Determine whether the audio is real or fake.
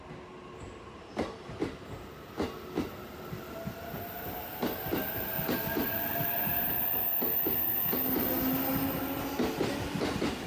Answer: real